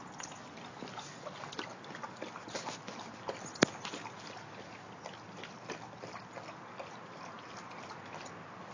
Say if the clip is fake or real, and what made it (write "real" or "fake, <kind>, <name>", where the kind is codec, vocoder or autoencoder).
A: real